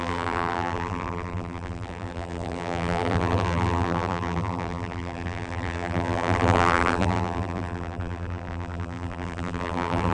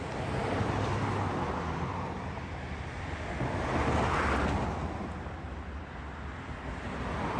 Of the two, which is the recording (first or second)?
second